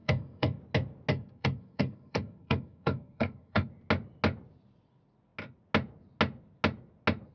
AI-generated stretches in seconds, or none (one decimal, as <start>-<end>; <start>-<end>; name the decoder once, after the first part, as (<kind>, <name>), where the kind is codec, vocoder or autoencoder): 0.0-0.6 (codec, SNAC); 1.1-3.7

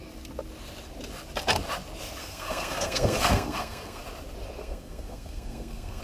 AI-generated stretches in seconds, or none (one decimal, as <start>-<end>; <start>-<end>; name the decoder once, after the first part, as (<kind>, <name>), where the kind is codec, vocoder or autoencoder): 2.2-4.0 (codec, SNAC); 4.6-6.0

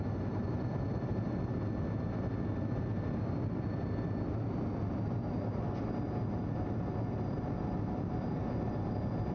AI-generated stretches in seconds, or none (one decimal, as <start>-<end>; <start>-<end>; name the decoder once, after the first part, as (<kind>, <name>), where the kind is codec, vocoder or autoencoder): none

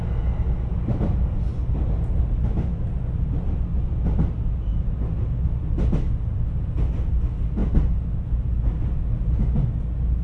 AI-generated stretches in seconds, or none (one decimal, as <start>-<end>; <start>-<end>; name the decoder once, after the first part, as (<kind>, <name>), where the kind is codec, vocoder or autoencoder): none

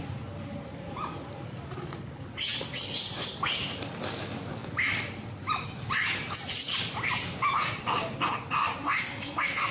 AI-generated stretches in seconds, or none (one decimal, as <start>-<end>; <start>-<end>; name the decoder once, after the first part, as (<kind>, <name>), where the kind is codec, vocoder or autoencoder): none

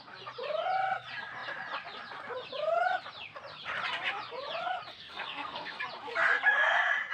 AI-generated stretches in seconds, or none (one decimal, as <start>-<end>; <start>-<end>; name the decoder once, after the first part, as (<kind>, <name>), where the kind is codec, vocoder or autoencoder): 4.9-5.8 (codec, SNAC)